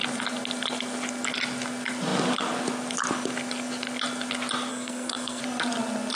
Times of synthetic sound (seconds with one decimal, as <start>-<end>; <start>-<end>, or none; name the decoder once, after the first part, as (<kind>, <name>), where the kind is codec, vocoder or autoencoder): 4.7-5.4 (codec, SNAC)

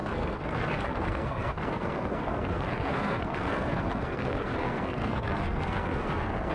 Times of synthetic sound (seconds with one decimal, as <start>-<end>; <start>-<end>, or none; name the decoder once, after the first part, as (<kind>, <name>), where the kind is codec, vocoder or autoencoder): 0.0-6.5 (codec, SNAC)